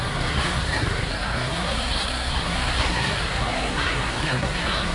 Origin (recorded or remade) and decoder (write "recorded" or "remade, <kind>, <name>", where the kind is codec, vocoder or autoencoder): remade, codec, SNAC